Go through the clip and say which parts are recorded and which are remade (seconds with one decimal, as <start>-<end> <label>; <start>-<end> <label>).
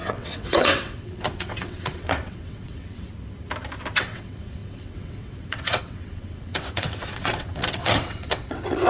0.0-3.1 remade; 3.1-4.0 recorded; 4.0-8.9 remade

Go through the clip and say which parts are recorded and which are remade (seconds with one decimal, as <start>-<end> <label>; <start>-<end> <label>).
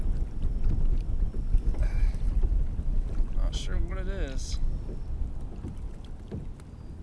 0.0-7.0 recorded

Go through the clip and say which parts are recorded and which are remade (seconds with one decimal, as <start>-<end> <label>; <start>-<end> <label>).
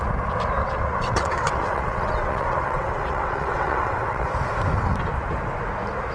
0.0-0.6 recorded; 0.6-4.3 remade; 4.3-6.1 recorded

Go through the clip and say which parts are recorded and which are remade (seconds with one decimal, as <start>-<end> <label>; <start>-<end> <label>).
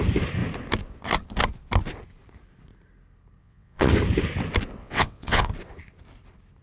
0.0-3.4 recorded; 3.4-3.9 remade; 3.9-4.8 recorded; 4.8-5.5 remade; 5.5-6.6 recorded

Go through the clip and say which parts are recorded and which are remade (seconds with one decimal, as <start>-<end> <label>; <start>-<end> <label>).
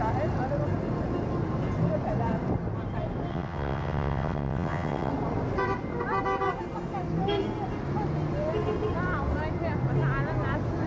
0.0-3.3 recorded; 3.3-5.1 remade; 5.1-10.9 recorded